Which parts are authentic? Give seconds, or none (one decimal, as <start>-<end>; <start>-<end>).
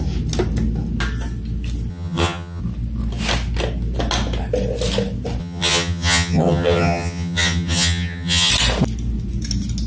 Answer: 0.0-1.9; 2.6-5.4; 8.5-9.9